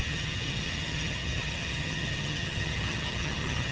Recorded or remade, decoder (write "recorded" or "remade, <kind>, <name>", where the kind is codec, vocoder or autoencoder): remade, vocoder, HiFi-GAN